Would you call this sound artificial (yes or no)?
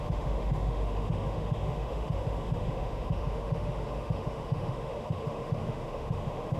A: yes